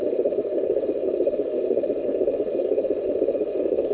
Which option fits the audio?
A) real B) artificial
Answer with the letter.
B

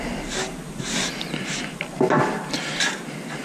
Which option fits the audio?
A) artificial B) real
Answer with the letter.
B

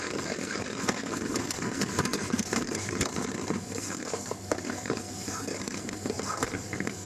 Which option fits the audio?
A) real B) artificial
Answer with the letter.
B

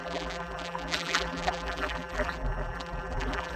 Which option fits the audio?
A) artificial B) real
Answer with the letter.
A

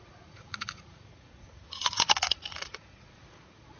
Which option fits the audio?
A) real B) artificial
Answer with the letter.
B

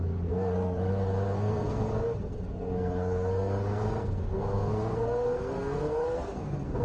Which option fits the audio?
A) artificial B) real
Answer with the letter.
A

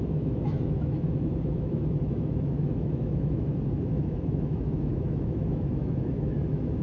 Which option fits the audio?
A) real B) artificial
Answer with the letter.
B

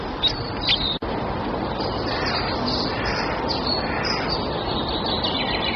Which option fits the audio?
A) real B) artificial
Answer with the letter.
A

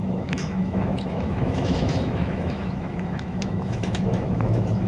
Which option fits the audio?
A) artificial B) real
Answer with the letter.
A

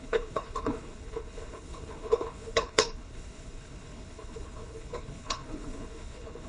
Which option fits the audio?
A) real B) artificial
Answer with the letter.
B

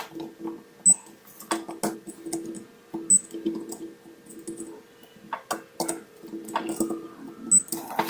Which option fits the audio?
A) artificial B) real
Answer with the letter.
B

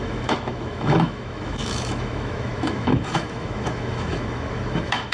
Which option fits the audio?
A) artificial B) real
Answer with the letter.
A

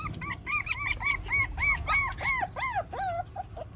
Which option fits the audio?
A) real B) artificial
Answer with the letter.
A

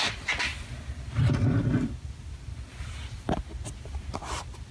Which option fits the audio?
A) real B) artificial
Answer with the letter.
B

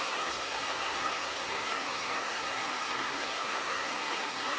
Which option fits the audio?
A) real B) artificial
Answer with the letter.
B